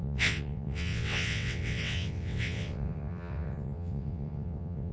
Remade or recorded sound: remade